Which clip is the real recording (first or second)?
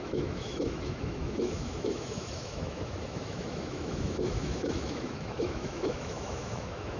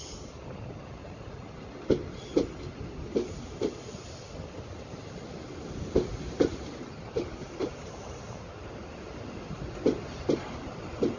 second